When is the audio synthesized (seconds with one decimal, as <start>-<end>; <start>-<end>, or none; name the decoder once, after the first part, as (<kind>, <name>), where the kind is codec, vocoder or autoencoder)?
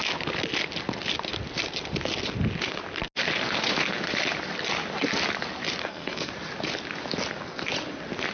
5.8-6.3 (codec, SNAC)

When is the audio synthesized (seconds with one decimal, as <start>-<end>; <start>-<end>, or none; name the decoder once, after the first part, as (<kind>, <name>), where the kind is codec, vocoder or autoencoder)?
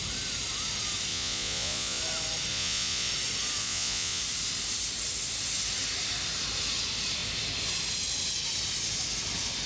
1.1-2.0 (vocoder, Vocos); 2.5-3.1; 3.6-4.2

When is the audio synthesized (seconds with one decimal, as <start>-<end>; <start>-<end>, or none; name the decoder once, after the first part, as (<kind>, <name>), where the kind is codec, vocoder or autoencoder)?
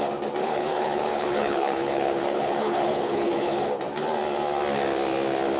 0.4-3.8 (codec, HILCodec)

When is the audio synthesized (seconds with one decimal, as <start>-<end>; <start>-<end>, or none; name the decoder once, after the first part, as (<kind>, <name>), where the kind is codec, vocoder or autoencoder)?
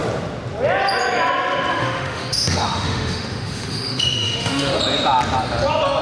1.7-4.8 (autoencoder, DAC-VAE)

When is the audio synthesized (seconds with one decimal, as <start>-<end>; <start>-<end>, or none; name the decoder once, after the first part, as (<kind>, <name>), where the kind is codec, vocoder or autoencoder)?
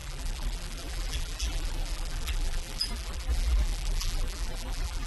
0.0-5.1 (vocoder, BigVGAN v2)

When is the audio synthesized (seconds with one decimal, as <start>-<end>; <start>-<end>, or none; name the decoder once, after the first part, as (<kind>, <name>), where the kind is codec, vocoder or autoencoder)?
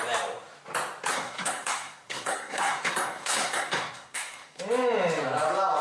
1.1-4.6 (codec, SNAC)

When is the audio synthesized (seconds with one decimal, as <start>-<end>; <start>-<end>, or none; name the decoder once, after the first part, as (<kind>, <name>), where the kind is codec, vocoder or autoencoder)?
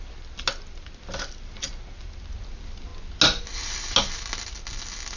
none